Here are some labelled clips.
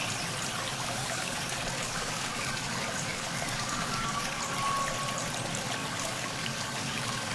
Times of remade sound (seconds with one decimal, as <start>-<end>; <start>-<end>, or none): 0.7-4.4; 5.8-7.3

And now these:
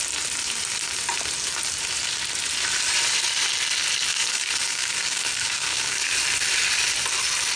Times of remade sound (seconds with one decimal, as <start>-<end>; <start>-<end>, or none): 4.1-6.1

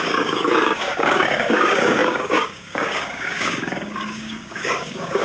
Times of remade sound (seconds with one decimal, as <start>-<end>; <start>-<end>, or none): 0.0-5.2